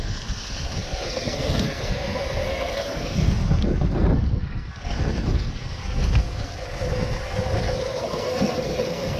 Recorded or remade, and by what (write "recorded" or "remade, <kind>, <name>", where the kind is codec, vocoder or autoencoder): remade, codec, SNAC